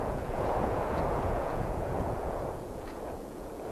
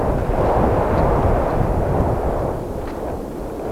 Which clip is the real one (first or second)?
second